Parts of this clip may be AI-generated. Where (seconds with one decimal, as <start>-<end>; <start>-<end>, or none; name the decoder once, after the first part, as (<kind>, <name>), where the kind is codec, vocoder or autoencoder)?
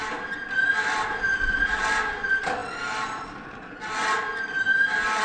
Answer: none